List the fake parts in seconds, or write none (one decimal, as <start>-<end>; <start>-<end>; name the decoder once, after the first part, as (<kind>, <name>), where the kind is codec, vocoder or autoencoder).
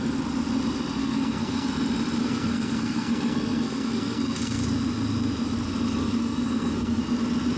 1.0-1.7 (codec, SNAC); 2.2-4.6; 6.0-7.0